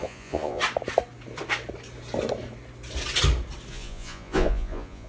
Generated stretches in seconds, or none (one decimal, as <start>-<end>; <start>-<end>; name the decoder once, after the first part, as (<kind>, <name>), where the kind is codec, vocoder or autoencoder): 0.0-0.6 (vocoder, Vocos); 3.7-5.1